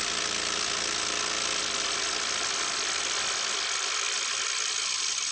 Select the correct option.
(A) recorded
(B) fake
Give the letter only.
A